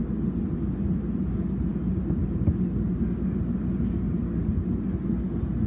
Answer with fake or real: real